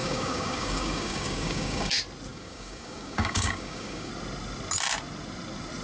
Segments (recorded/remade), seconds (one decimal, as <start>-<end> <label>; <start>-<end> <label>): 0.0-1.9 remade; 1.9-2.3 recorded; 2.3-4.1 remade; 4.1-5.8 recorded

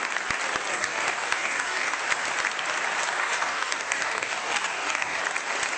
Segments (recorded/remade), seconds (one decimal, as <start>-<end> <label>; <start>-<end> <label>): 0.0-0.7 recorded; 0.7-2.0 remade; 2.0-3.2 recorded; 3.2-5.2 remade; 5.2-5.8 recorded

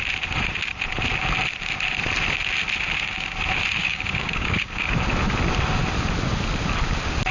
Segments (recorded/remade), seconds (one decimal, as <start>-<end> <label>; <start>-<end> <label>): 0.0-3.8 recorded; 3.8-4.9 remade; 4.9-7.3 recorded

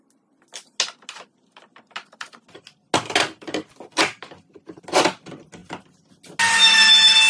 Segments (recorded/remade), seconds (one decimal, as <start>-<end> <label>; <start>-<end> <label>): 0.0-7.3 recorded

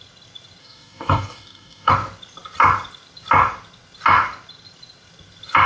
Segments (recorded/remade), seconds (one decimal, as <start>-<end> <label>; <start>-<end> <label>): 0.0-0.6 recorded; 0.6-1.9 remade; 1.9-5.7 recorded